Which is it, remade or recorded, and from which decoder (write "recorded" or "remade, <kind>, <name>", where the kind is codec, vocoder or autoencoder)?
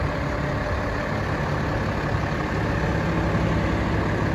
recorded